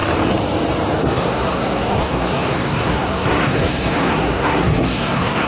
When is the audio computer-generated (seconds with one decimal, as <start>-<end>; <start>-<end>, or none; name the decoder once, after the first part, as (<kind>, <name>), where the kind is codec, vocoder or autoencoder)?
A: 1.0-5.5 (codec, SNAC)